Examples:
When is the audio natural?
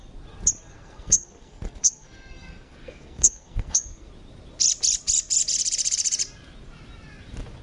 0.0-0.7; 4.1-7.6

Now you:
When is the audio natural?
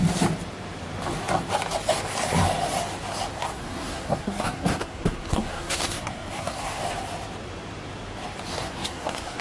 0.0-3.3; 6.8-8.5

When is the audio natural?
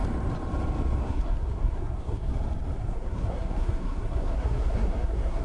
0.0-1.0; 2.3-2.8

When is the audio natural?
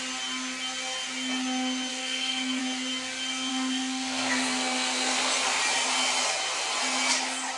0.0-1.9; 2.6-3.5; 5.6-7.6